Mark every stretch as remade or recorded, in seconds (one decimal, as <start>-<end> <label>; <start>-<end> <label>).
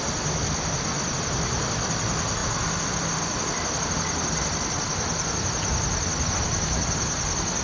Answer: 0.0-7.6 recorded